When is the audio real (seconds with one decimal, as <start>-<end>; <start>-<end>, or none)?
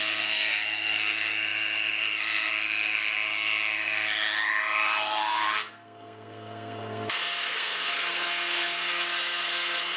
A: none